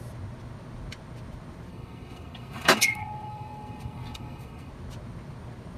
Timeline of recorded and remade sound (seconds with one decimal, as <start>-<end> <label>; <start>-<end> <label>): 0.0-1.7 recorded; 1.7-4.7 remade; 4.7-5.8 recorded